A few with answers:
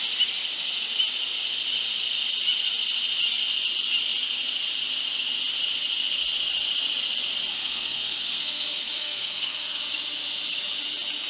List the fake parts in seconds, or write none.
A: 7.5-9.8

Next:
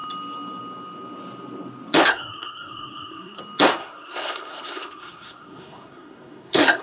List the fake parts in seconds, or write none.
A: 2.1-3.4; 3.8-6.8